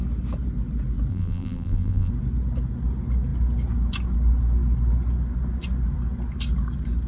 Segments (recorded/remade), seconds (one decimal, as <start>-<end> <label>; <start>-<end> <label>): 0.0-1.1 recorded; 1.1-2.1 remade; 2.1-7.1 recorded